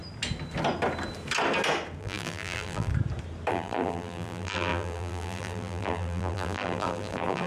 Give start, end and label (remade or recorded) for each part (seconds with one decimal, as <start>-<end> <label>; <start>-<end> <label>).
0.0-2.0 recorded; 2.0-2.9 remade; 2.9-3.5 recorded; 3.5-7.5 remade